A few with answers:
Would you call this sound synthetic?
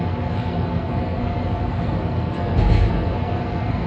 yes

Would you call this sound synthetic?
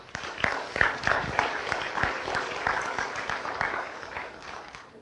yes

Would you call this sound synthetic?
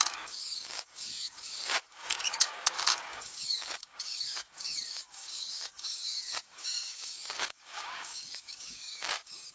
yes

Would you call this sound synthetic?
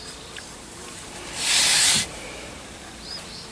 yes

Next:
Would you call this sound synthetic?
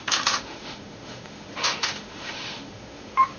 yes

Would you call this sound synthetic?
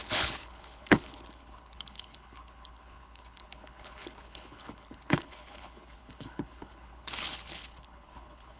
yes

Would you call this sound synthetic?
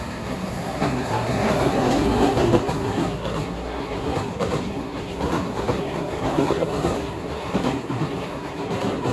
yes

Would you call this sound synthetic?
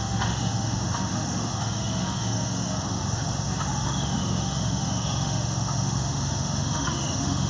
yes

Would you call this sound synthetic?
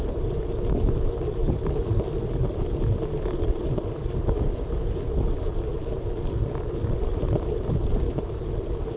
no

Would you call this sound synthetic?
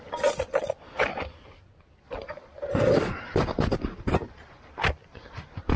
no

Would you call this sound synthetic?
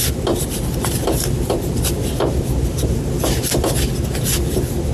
no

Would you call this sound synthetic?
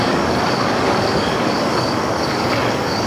yes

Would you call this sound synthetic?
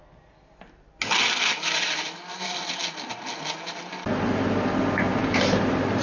no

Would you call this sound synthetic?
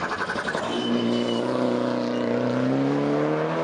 no